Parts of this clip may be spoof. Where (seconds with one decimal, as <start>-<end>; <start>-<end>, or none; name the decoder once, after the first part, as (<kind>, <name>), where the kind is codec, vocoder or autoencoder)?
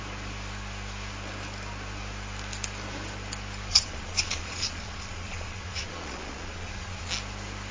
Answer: 3.7-7.1 (vocoder, Vocos)